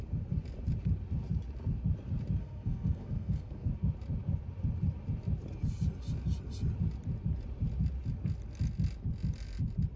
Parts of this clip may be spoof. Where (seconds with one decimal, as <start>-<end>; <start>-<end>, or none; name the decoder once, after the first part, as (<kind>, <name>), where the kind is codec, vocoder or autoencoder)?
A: 2.4-3.7 (codec, SNAC)

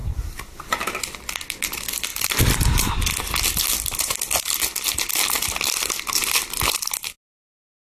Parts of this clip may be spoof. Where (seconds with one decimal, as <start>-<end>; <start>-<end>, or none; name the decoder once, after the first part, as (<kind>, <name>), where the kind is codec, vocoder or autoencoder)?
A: 2.1-2.9 (vocoder, BigVGAN v2)

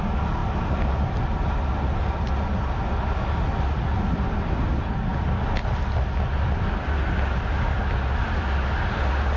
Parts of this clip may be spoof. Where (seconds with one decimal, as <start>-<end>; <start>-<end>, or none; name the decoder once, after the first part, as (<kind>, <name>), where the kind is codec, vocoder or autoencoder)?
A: none